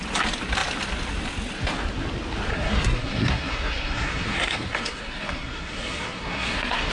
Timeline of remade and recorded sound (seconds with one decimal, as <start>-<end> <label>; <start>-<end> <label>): 0.0-2.5 recorded; 2.5-6.9 remade